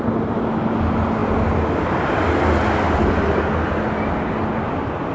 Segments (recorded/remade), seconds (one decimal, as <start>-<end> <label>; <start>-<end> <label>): 0.0-5.1 recorded

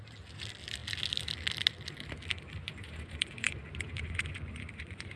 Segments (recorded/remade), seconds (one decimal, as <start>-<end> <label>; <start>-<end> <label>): 0.0-2.6 recorded; 2.6-5.2 remade

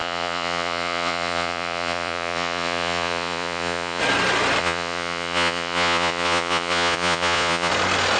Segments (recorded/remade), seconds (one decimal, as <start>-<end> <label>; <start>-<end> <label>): 0.0-4.0 remade; 4.0-4.6 recorded; 4.6-7.7 remade; 7.7-8.2 recorded

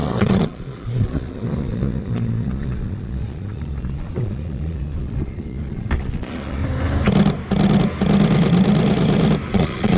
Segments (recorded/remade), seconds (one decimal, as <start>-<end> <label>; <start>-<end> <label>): 0.0-6.6 remade; 6.6-9.5 recorded; 9.5-10.0 remade

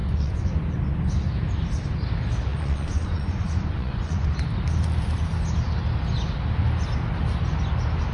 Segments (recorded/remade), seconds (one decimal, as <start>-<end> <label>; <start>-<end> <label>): 0.0-0.5 remade; 0.5-2.5 recorded; 2.5-4.3 remade; 4.3-8.1 recorded

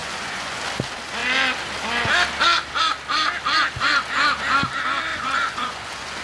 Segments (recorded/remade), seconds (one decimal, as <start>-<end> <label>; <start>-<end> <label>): 0.0-0.6 remade; 0.6-5.1 recorded; 5.1-6.2 remade

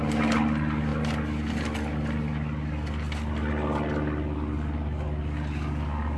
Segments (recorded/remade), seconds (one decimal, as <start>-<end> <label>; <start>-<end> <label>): 0.0-6.2 recorded